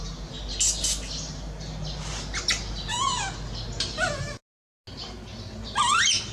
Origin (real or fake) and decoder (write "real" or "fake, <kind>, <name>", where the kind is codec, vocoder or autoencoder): real